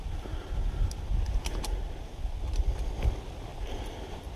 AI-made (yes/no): no